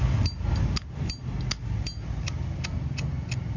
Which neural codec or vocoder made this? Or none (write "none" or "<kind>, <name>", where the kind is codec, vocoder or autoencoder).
none